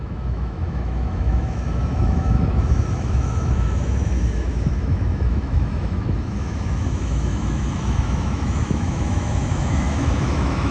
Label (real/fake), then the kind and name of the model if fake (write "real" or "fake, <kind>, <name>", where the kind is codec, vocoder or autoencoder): fake, autoencoder, DAC-VAE